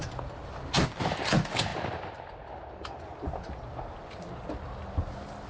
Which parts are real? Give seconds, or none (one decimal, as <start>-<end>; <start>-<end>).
0.0-5.5